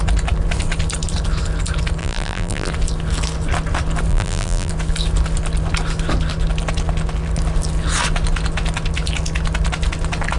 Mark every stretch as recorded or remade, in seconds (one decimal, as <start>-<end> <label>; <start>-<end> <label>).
0.0-2.0 recorded; 2.0-2.7 remade; 2.7-4.1 recorded; 4.1-4.7 remade; 4.7-10.4 recorded